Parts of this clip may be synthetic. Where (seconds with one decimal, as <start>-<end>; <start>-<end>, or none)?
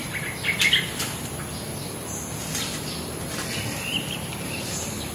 none